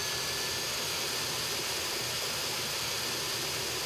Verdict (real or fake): real